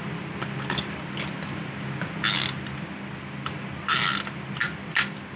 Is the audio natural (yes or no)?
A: yes